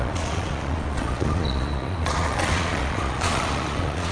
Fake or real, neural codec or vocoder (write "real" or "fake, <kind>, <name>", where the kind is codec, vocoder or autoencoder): fake, vocoder, Vocos